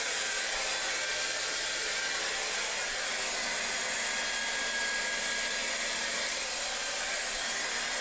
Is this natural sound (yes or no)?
yes